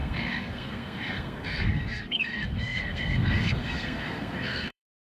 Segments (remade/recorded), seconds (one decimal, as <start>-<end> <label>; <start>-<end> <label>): 0.0-5.1 remade